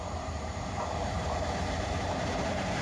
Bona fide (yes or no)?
no